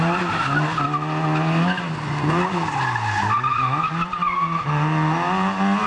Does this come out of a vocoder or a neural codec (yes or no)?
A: no